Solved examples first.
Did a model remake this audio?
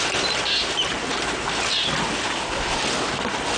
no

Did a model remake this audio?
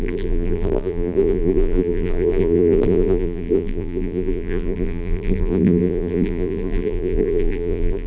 yes